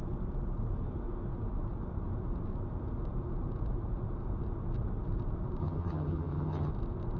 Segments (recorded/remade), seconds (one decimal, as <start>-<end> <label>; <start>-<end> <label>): 0.0-5.6 recorded; 5.6-6.7 remade; 6.7-7.2 recorded